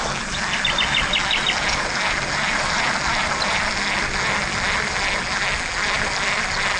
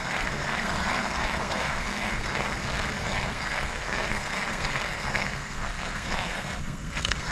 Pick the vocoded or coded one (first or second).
second